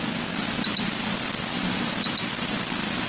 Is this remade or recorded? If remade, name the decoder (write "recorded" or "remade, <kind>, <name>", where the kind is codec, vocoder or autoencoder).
recorded